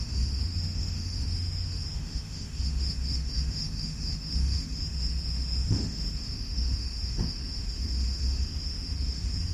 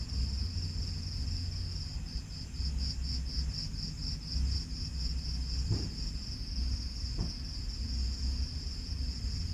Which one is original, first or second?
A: second